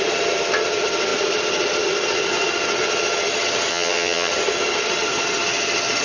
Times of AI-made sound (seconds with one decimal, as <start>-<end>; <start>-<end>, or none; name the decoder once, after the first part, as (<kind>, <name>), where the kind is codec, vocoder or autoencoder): 3.7-4.3 (vocoder, HiFi-GAN)